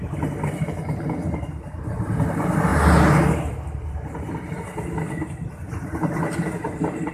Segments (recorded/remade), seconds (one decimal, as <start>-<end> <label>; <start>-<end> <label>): 0.0-7.1 recorded